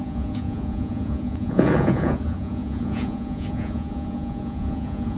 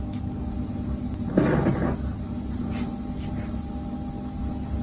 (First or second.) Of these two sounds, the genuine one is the second